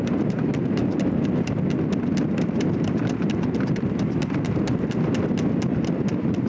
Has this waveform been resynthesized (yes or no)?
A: no